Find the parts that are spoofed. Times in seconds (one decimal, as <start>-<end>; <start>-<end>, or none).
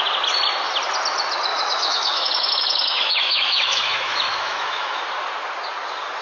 1.5-5.0